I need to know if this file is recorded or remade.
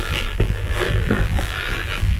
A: remade